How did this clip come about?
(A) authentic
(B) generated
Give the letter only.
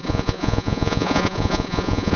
B